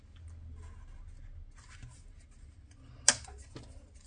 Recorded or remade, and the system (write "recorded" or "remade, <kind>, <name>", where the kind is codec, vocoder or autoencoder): recorded